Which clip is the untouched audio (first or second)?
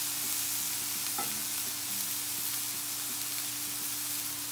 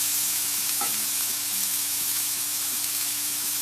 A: first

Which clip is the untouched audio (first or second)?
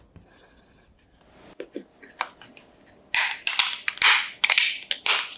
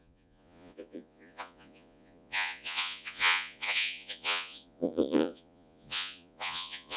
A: first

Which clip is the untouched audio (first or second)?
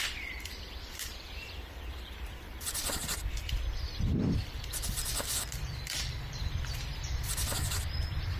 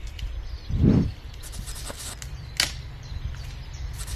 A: second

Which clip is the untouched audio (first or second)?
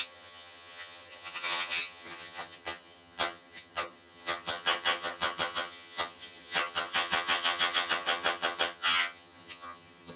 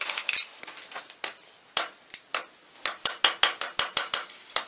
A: second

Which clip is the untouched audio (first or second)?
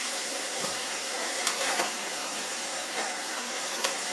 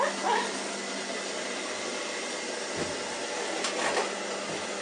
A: second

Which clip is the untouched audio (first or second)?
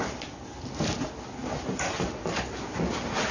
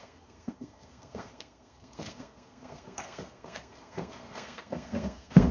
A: first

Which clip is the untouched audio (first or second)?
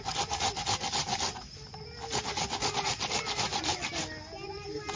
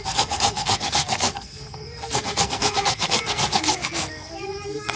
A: first